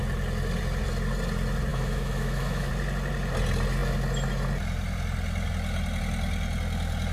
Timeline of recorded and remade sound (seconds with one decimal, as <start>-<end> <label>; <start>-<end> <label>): 0.0-1.7 recorded; 1.7-2.7 remade; 2.7-7.1 recorded